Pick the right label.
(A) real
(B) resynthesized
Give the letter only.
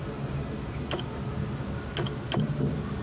A